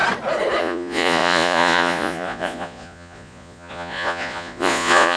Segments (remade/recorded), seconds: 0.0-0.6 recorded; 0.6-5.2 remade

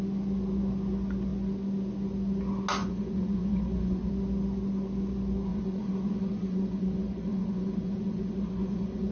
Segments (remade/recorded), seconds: 0.0-2.8 recorded; 2.8-4.1 remade; 4.1-5.5 recorded; 5.5-9.1 remade